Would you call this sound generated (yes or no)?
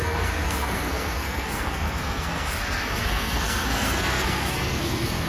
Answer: yes